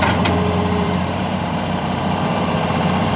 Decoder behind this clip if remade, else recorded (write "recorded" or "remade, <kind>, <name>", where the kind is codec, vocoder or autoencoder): remade, vocoder, BigVGAN v2